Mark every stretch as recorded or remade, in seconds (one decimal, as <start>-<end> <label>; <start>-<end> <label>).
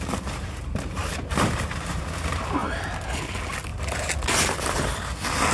0.0-1.0 recorded; 1.0-2.0 remade; 2.0-2.6 recorded; 2.6-3.2 remade; 3.2-5.5 recorded